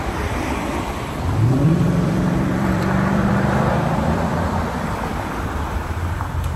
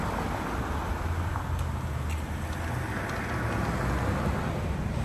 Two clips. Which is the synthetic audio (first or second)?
first